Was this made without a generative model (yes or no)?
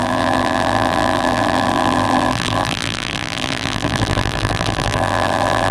no